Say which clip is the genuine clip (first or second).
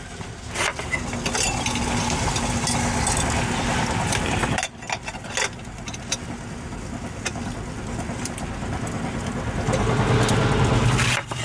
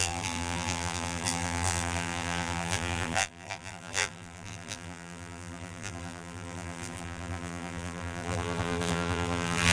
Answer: first